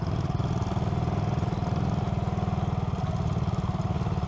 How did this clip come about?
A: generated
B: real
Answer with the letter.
B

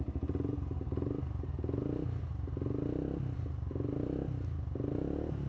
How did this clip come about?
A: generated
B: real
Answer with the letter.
B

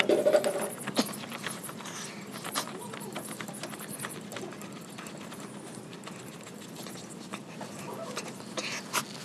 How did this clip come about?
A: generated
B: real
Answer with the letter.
B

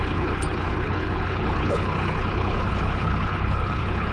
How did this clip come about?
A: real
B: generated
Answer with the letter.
B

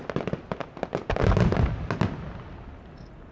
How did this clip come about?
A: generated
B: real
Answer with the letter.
B